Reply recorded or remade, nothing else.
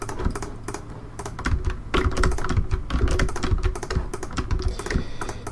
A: recorded